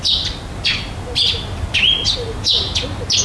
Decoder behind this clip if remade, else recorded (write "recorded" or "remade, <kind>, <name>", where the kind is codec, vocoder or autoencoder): recorded